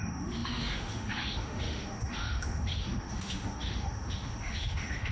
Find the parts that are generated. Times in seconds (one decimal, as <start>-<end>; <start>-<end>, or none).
0.0-5.1